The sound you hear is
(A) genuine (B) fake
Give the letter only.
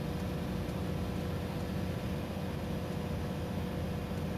A